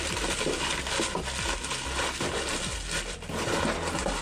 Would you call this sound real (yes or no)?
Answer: yes